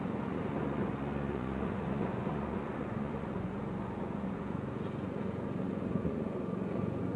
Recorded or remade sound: remade